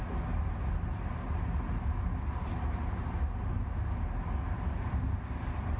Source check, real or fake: real